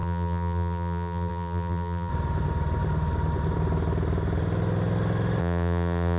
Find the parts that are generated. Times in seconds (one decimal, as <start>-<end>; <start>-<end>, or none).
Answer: 0.0-2.1; 5.4-6.2